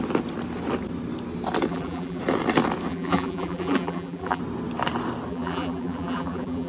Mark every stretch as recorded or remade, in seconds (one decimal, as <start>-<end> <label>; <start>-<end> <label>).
0.0-1.7 recorded; 1.7-2.2 remade; 2.2-2.9 recorded; 2.9-4.4 remade; 4.4-5.3 recorded; 5.3-6.7 remade